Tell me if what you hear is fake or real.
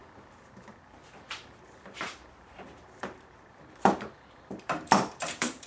fake